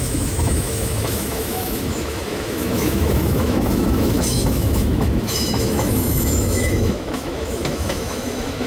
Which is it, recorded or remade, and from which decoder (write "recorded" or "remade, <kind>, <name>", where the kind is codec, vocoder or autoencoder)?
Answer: remade, autoencoder, DAC-VAE